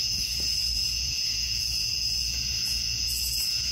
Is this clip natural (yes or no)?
no